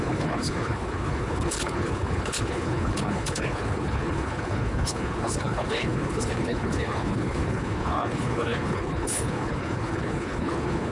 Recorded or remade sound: remade